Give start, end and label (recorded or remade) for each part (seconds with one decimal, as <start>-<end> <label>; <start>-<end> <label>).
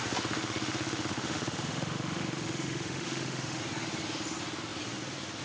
0.0-0.4 recorded; 0.4-3.6 remade; 3.6-5.4 recorded